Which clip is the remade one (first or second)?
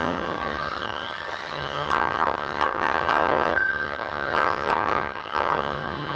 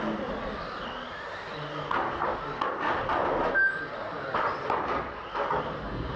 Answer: first